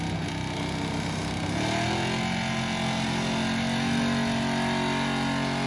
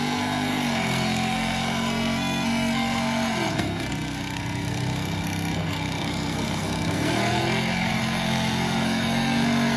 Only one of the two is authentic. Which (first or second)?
first